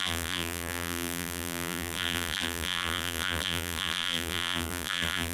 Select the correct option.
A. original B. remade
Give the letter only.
B